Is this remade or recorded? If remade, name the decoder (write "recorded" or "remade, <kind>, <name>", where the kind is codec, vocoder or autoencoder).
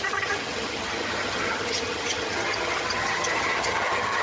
remade, vocoder, HiFi-GAN